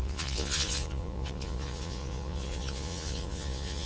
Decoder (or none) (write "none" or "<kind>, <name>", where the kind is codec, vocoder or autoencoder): vocoder, Vocos